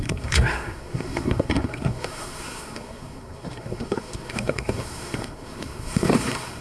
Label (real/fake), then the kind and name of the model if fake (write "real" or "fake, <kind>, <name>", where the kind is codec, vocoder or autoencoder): fake, codec, SNAC